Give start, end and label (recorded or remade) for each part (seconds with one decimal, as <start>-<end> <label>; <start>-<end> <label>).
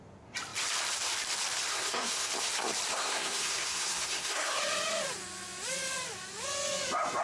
0.0-1.7 recorded; 1.7-2.3 remade; 2.3-2.9 recorded; 2.9-4.5 remade; 4.5-7.2 recorded